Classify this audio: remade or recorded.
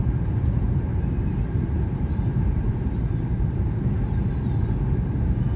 remade